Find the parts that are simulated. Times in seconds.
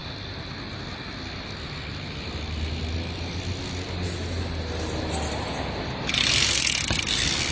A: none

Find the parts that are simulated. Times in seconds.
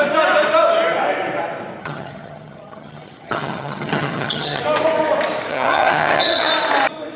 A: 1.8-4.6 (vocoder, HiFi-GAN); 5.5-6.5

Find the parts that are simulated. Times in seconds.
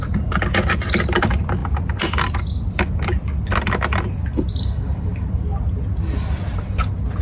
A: none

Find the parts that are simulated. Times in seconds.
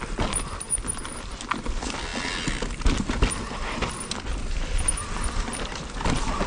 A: none